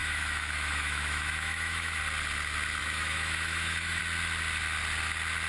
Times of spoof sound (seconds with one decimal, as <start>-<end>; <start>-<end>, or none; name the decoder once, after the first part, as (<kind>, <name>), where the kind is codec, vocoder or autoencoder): 0.0-2.0 (autoencoder, DAC-VAE); 2.8-4.0